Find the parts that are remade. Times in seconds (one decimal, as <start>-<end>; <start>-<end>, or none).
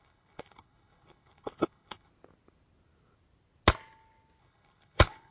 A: 0.0-2.1; 4.4-5.3